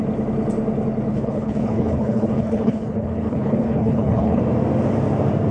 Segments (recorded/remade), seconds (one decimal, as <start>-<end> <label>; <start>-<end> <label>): 0.0-1.1 recorded; 1.1-4.4 remade; 4.4-5.5 recorded